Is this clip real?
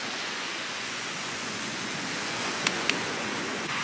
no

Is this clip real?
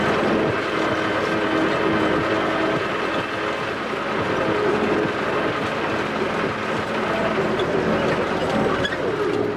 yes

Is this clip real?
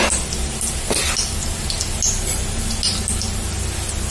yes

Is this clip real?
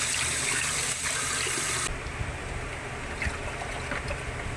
yes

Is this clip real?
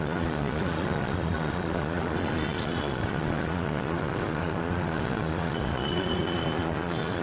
no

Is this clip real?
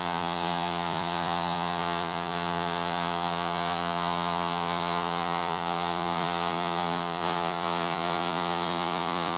no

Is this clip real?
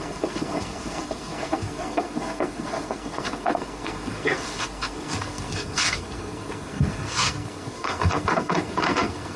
no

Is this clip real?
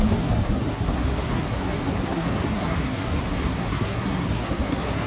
no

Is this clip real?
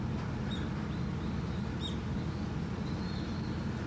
yes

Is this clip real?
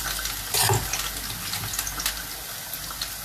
yes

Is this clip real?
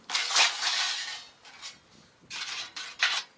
yes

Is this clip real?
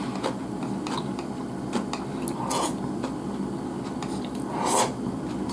yes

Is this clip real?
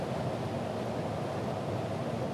yes